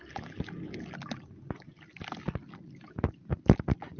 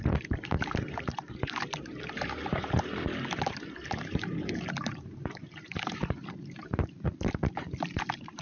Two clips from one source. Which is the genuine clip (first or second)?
first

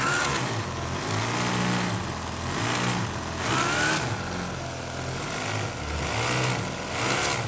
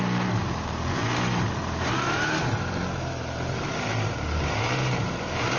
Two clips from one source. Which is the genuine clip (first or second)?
first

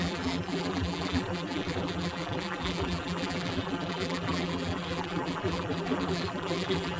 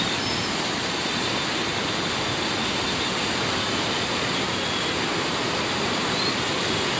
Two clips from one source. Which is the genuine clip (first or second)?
second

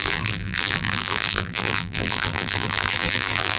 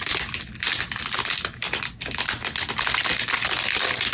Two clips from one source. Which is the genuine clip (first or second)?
second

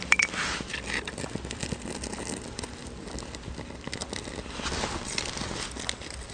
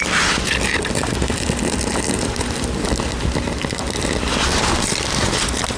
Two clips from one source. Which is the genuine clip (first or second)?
first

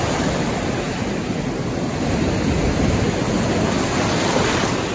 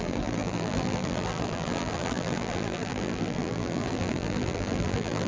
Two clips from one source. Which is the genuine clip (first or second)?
first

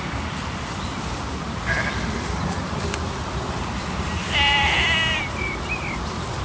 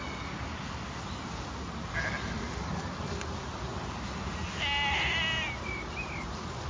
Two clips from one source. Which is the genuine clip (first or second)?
second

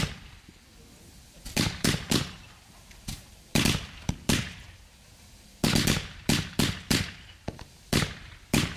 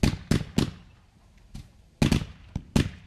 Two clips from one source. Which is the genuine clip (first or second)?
second